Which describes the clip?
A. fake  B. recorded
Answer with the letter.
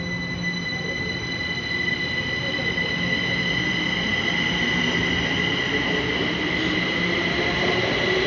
B